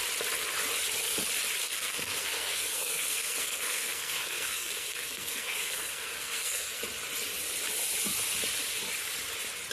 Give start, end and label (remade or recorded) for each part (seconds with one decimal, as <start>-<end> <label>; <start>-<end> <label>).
0.0-1.6 recorded; 1.6-6.8 remade; 6.8-9.7 recorded